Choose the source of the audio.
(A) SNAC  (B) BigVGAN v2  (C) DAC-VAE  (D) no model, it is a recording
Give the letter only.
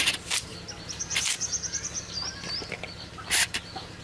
D